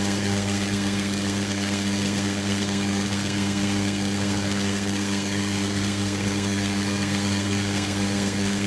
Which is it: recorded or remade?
remade